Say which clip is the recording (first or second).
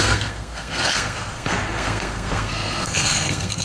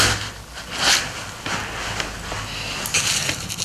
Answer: second